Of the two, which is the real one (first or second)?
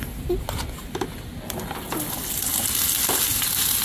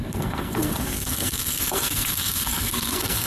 first